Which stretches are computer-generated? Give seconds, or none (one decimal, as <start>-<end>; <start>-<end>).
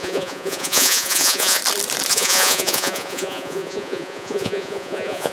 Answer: 0.0-1.6; 2.1-5.3